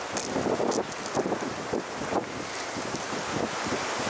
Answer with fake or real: real